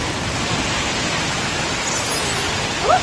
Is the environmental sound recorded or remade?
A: recorded